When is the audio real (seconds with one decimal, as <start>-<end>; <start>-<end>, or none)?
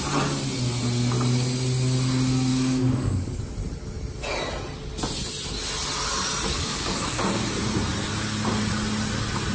0.0-2.5; 3.4-6.5; 7.2-9.5